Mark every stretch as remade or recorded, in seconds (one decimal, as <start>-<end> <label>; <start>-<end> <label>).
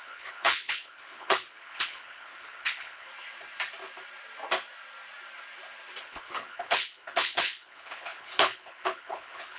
0.0-3.1 remade; 3.1-6.0 recorded; 6.0-9.6 remade